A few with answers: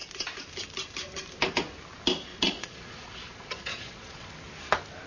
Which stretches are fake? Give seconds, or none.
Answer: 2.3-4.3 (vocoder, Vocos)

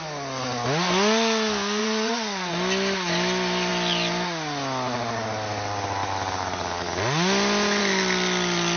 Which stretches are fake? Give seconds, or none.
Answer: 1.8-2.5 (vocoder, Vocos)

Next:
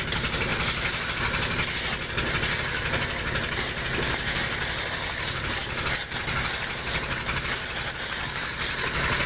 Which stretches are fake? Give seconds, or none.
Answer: none